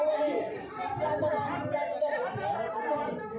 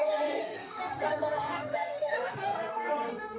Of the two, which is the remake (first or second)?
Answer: second